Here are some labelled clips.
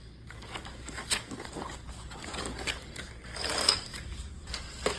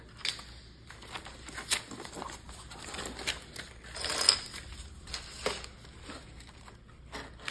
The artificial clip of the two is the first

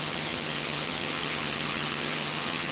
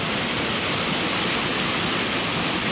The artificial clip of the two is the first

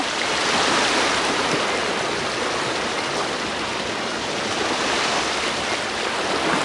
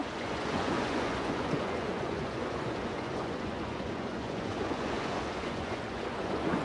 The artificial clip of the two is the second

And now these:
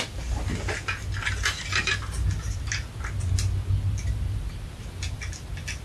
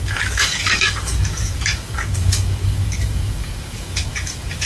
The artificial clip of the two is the second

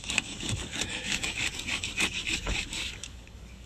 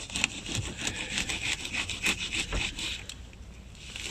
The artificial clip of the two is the first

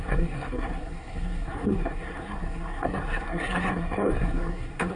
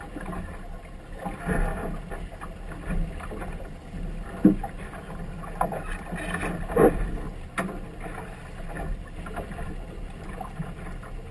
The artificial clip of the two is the first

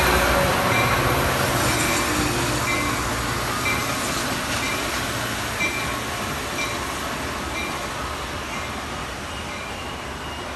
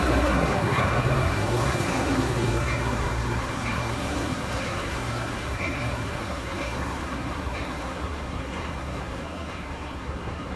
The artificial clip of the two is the second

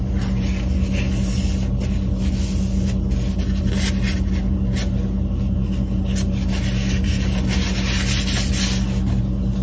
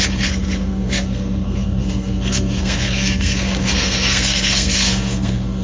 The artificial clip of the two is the second